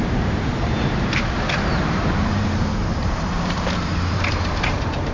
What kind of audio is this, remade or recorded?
remade